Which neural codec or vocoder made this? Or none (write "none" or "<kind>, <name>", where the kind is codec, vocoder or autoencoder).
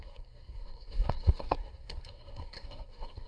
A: codec, SNAC